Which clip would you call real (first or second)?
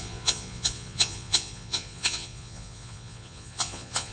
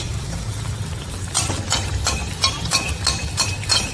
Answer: second